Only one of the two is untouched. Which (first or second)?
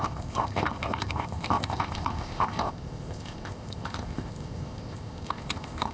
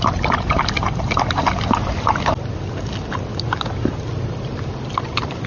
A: second